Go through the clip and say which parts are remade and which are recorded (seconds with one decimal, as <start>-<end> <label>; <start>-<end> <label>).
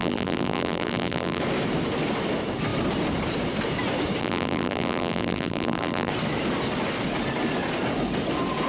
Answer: 0.0-1.4 remade; 1.4-4.2 recorded; 4.2-6.1 remade; 6.1-8.7 recorded